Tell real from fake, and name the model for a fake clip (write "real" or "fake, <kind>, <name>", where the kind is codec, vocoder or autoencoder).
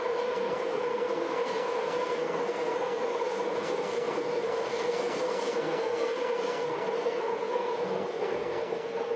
fake, codec, SNAC